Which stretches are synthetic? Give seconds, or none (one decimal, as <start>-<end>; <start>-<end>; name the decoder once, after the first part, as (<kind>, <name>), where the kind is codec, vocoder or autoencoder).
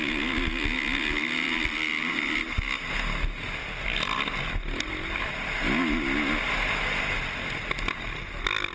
1.7-2.9 (vocoder, BigVGAN v2); 3.6-5.3